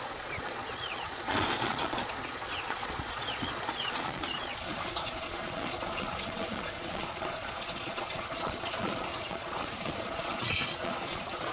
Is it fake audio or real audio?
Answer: fake